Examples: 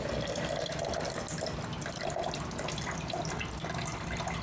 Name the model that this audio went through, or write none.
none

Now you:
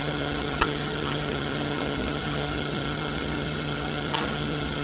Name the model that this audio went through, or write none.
vocoder, HiFi-GAN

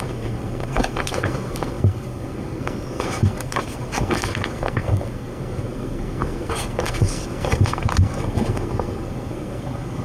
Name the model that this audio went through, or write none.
codec, SNAC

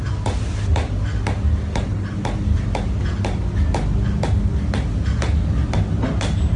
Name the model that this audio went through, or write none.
none